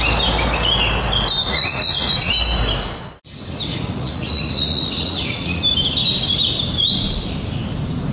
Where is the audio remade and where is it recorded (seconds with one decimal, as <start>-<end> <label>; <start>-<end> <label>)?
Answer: 0.0-1.4 recorded; 1.4-2.3 remade; 2.3-3.7 recorded; 3.7-5.6 remade; 5.6-8.1 recorded